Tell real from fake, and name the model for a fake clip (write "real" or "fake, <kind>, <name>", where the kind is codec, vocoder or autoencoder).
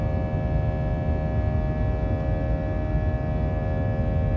real